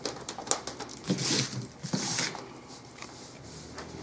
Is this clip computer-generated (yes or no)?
no